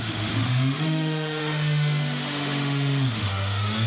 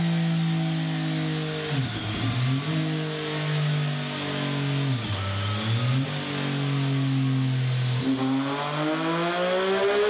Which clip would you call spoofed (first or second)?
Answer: first